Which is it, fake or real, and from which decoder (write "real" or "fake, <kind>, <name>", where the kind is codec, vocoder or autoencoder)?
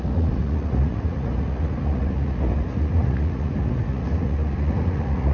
fake, vocoder, Vocos